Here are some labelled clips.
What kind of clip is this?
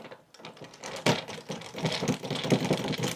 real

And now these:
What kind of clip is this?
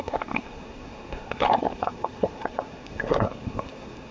fake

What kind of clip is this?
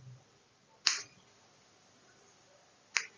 real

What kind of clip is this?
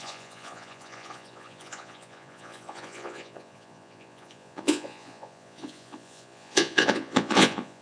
fake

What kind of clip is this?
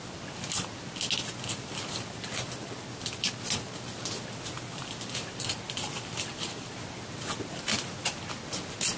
real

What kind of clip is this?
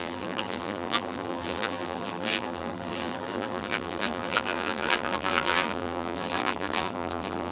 fake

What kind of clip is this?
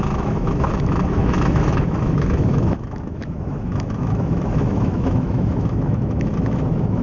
fake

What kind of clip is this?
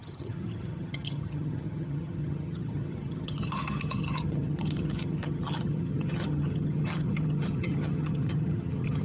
fake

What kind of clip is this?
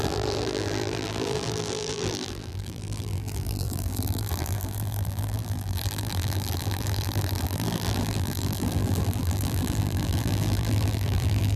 fake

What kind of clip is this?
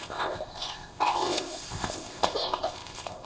fake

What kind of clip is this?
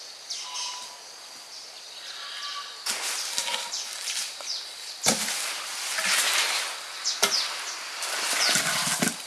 real